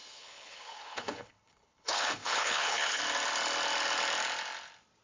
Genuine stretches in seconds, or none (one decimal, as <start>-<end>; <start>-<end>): 3.0-5.0